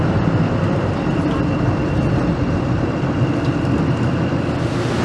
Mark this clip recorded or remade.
recorded